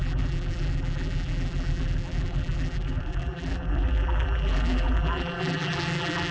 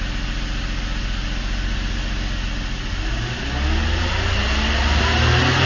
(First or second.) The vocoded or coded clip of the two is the first